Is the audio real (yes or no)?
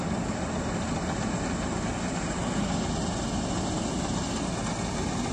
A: yes